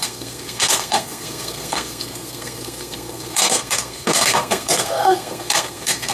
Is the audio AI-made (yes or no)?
yes